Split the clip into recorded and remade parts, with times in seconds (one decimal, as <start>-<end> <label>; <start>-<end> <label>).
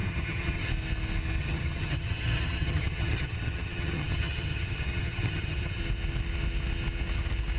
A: 0.0-0.7 remade; 0.7-1.4 recorded; 1.4-5.8 remade; 5.8-7.6 recorded